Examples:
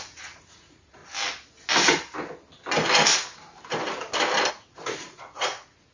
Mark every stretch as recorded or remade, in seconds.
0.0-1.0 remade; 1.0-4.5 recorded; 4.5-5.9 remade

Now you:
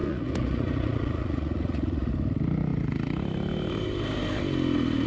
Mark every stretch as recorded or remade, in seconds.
0.0-2.1 remade; 2.1-5.1 recorded